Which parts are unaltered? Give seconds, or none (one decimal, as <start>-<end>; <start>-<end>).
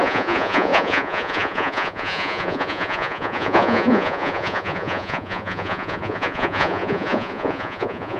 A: none